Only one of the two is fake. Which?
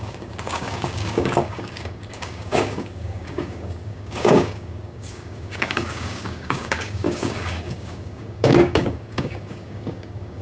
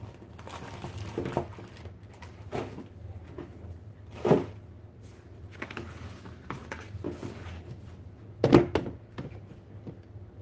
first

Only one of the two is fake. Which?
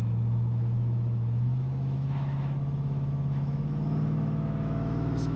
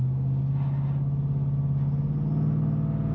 first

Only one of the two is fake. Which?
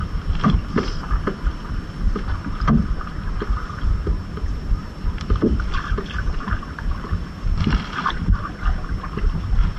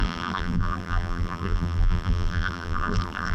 second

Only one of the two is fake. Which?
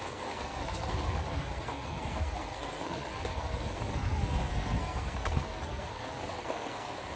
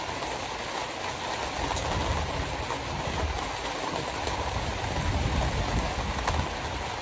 first